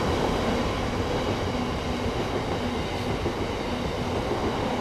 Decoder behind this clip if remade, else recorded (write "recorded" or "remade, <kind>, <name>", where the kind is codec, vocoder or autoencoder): recorded